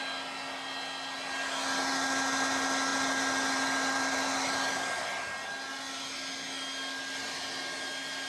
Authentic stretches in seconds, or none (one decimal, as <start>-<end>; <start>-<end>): 0.0-2.9; 5.2-8.3